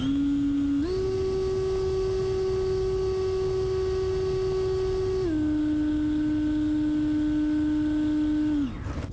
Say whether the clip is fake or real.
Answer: real